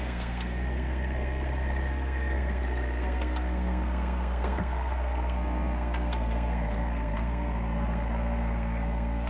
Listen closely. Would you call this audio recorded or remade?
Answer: remade